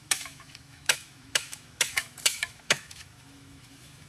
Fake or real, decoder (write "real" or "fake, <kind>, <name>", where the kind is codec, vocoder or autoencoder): fake, autoencoder, DAC-VAE